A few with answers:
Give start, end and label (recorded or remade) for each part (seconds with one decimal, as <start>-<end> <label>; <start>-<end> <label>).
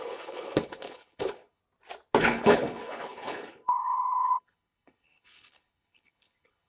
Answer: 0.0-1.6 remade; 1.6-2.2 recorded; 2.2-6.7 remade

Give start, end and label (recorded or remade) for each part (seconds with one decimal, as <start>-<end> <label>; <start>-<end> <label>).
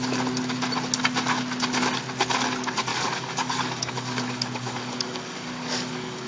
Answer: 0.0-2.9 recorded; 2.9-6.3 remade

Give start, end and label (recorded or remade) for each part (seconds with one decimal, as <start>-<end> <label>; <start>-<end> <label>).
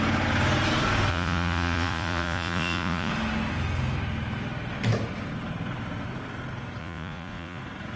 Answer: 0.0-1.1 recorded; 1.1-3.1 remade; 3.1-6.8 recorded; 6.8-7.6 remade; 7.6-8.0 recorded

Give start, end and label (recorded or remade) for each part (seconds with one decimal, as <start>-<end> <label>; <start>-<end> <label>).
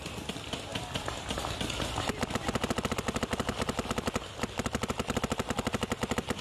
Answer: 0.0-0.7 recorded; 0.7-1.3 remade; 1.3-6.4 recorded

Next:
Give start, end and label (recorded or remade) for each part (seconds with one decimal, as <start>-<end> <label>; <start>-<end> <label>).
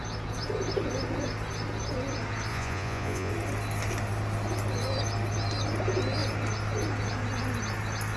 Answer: 0.0-2.5 recorded; 2.5-3.3 remade; 3.3-8.2 recorded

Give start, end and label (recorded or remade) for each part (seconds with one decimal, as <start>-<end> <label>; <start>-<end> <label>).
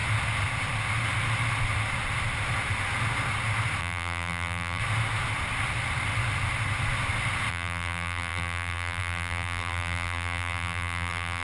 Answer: 0.0-3.8 recorded; 3.8-4.8 remade; 4.8-7.5 recorded; 7.5-11.4 remade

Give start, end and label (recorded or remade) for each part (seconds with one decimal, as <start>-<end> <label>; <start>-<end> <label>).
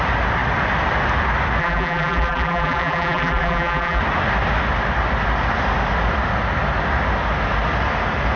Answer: 0.0-1.6 recorded; 1.6-4.0 remade; 4.0-8.4 recorded